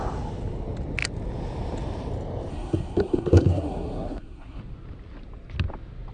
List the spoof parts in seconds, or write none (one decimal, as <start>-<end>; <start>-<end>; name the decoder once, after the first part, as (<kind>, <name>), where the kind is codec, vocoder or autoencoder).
2.5-4.6 (codec, SNAC)